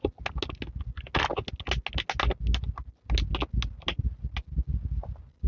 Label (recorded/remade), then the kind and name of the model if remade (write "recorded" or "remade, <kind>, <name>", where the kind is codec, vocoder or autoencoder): recorded